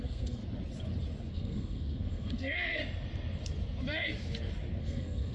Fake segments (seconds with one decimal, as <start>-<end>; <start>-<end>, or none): 0.0-0.4; 1.3-2.8; 4.8-5.3